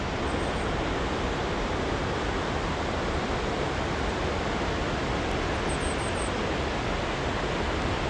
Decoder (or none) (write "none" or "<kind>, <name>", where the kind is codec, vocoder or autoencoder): none